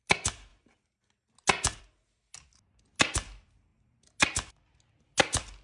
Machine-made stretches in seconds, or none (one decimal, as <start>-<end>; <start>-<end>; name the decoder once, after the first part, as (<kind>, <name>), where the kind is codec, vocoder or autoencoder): none